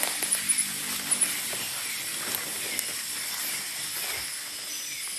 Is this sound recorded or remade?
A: recorded